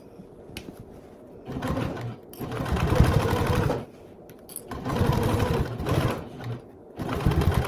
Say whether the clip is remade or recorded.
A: recorded